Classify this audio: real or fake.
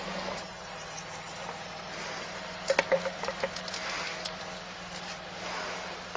real